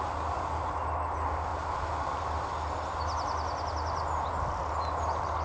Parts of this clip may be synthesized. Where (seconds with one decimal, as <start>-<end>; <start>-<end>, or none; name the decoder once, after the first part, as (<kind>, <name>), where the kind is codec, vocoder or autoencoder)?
none